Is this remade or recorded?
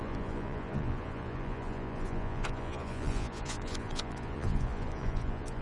remade